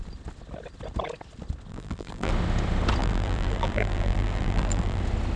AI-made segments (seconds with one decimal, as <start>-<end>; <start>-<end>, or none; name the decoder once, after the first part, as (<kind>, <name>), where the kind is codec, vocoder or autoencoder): 1.7-2.3 (vocoder, BigVGAN v2); 3.0-5.0